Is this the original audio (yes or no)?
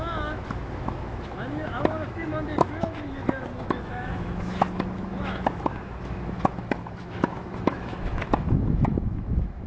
no